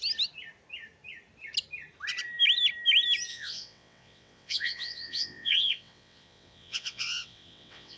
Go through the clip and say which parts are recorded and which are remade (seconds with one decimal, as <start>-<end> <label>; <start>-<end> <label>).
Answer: 0.0-3.3 recorded; 3.3-8.0 remade